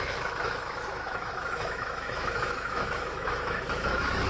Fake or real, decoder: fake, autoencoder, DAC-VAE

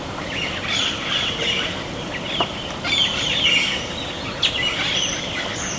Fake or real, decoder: real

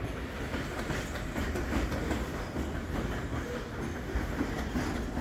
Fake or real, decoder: real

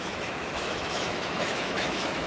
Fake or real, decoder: fake, autoencoder, DAC-VAE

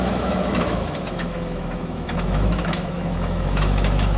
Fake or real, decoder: fake, autoencoder, DAC-VAE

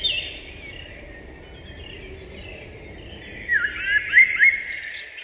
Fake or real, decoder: real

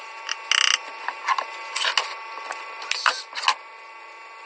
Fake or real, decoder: real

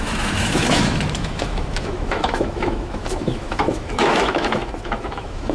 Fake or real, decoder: fake, autoencoder, DAC-VAE